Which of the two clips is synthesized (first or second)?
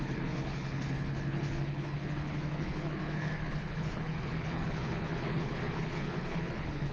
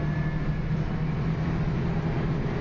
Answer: first